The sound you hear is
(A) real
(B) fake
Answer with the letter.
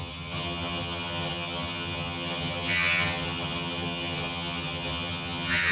B